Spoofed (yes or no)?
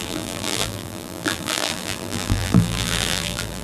yes